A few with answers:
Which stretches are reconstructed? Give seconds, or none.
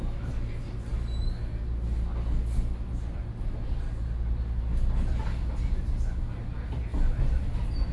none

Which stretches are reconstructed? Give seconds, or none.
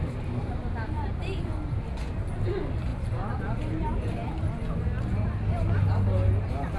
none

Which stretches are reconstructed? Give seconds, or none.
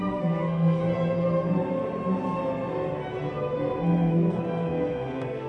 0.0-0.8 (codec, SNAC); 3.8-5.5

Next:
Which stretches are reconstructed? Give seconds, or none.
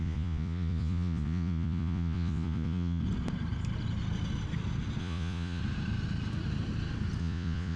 0.0-3.0 (vocoder, Vocos); 5.0-5.6; 7.2-7.8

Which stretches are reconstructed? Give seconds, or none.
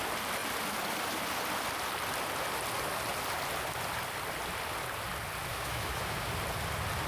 5.5-6.3 (autoencoder, DAC-VAE)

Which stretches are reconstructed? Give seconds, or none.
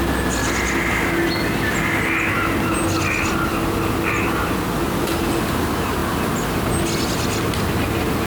none